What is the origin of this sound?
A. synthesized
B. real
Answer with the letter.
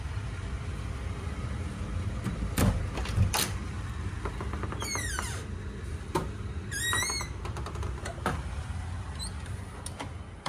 A